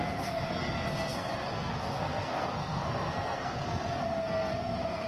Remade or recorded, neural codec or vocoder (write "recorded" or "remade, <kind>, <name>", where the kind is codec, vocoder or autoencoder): remade, codec, SNAC